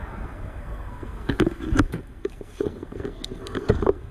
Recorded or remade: remade